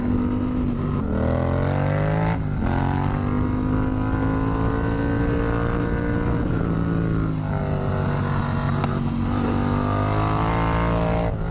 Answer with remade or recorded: recorded